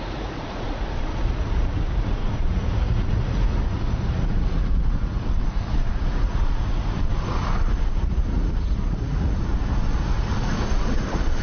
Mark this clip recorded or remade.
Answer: remade